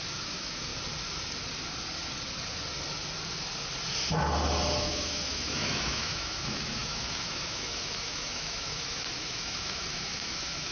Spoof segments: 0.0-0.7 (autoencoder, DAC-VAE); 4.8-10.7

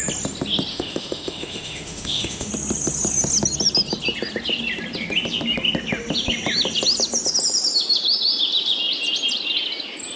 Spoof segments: 0.7-2.5 (autoencoder, DAC-VAE)

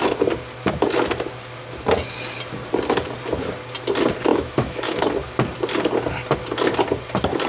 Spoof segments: 4.3-5.0 (autoencoder, DAC-VAE)

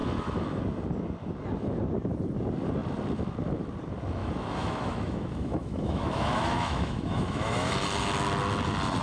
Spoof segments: 0.0-0.6 (autoencoder, DAC-VAE); 4.2-7.7